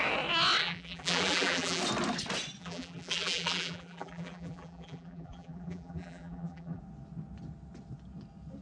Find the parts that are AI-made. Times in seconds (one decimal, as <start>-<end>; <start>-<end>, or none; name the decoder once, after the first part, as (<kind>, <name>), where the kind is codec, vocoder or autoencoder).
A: 0.6-1.8 (vocoder, BigVGAN v2); 2.6-6.8